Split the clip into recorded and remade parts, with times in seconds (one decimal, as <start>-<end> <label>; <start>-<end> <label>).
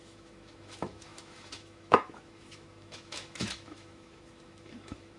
0.0-5.2 remade